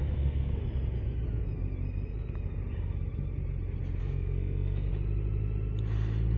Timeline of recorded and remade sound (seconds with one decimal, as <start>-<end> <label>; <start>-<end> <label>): 0.0-0.6 remade; 0.6-4.0 recorded; 4.0-4.9 remade; 4.9-6.4 recorded